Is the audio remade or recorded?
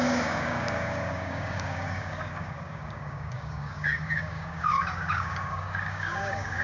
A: remade